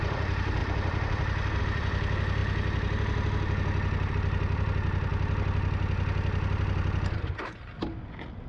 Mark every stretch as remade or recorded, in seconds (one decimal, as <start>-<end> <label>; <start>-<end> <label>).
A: 0.0-2.4 remade; 2.4-4.1 recorded; 4.1-5.1 remade; 5.1-8.5 recorded